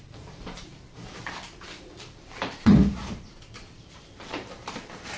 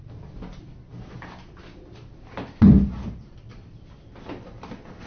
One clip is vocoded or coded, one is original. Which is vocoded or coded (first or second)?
first